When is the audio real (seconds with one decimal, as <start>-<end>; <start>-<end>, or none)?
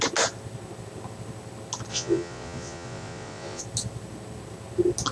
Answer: 0.0-1.9; 3.6-5.1